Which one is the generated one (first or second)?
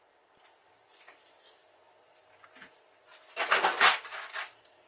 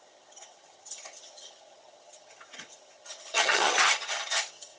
second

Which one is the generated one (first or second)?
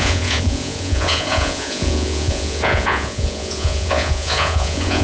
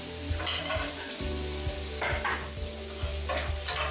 first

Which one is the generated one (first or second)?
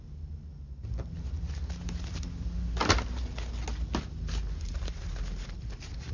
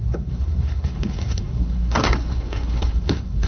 second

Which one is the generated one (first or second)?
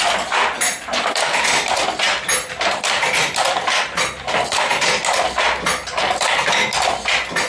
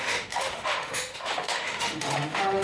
second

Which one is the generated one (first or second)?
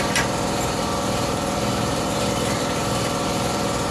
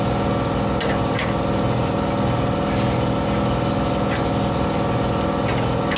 first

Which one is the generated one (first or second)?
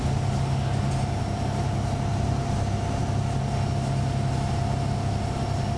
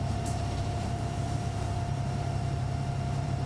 second